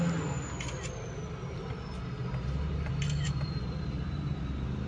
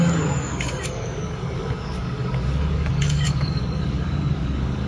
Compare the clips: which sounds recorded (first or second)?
first